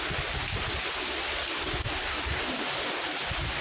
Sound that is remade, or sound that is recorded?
recorded